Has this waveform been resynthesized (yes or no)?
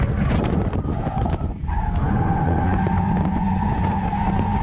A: yes